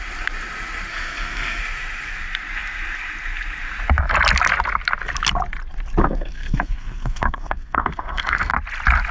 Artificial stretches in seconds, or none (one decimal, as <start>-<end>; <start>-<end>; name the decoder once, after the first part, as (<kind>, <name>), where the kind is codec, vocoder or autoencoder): 0.9-1.6 (codec, SNAC); 6.0-8.5